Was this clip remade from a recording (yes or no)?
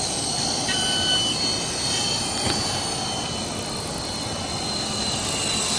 no